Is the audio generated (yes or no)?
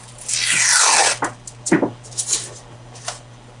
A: no